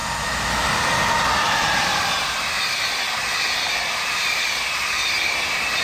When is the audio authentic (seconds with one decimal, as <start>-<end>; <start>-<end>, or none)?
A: 0.0-5.8